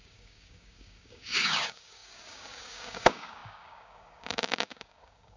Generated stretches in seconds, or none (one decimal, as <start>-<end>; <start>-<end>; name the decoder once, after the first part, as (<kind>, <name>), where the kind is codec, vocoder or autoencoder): 0.0-5.4 (codec, DAC)